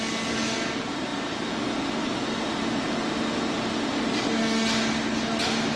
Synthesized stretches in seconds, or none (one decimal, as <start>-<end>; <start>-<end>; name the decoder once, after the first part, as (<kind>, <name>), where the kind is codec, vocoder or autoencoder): none